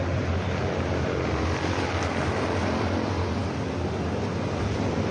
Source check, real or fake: real